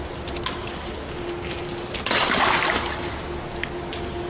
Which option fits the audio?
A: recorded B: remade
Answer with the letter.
A